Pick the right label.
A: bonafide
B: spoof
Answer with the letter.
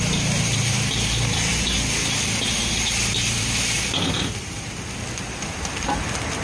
B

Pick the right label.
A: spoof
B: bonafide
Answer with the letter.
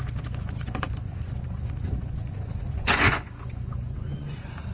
A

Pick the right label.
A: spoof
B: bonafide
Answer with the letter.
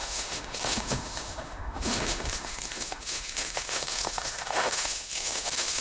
A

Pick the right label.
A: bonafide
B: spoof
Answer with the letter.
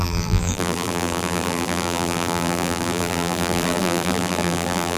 B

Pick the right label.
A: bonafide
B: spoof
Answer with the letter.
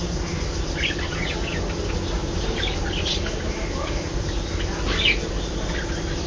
A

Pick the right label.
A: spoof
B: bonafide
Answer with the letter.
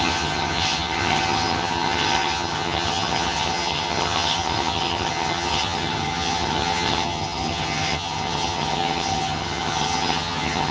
A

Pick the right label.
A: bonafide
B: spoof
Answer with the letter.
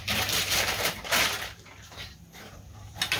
B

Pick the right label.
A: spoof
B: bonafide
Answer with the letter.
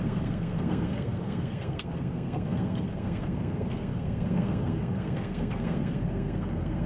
A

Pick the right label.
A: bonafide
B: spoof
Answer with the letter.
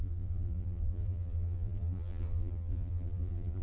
B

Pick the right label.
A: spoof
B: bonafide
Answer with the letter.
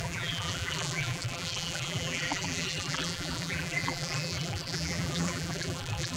A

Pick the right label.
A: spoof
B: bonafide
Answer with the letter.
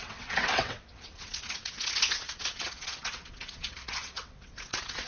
A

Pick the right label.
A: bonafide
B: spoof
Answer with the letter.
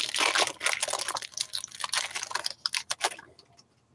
A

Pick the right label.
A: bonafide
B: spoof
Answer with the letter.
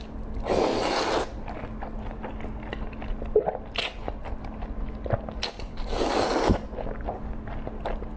A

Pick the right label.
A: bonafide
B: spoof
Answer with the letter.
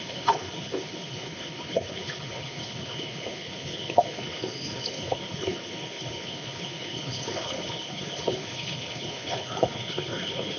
B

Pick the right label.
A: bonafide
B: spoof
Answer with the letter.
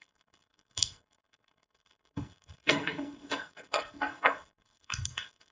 B